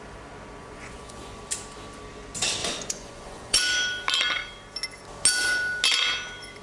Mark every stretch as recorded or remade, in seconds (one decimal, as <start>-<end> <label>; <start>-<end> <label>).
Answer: 0.0-0.6 recorded; 0.6-1.4 remade; 1.4-2.6 recorded; 2.6-3.6 remade; 3.6-6.6 recorded